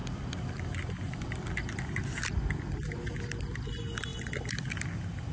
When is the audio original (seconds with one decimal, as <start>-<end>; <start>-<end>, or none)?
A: 0.0-5.3